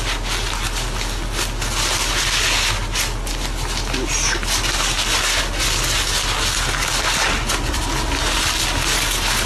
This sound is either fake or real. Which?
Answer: real